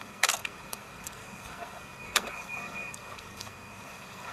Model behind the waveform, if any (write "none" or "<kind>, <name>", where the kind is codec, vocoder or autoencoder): codec, SNAC